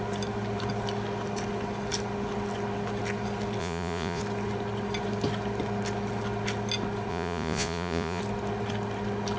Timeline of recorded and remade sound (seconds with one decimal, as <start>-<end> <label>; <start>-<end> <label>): 0.0-3.6 recorded; 3.6-4.2 remade; 4.2-7.1 recorded; 7.1-8.2 remade; 8.2-9.4 recorded